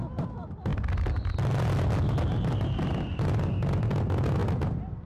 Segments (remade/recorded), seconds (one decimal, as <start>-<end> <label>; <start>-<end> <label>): 0.0-5.1 recorded